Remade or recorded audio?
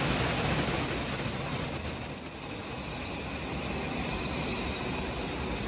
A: recorded